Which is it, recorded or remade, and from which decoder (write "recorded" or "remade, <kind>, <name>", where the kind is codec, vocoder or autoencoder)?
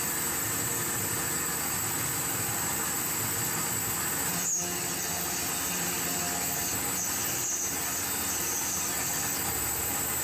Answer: recorded